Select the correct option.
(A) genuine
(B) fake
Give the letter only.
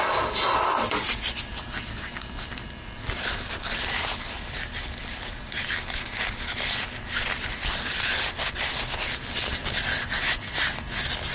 B